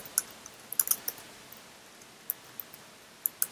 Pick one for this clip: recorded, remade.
recorded